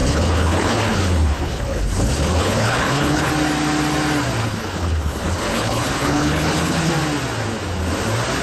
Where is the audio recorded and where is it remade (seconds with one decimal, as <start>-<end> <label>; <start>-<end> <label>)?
0.0-3.3 remade; 3.3-4.4 recorded; 4.4-6.9 remade; 6.9-8.4 recorded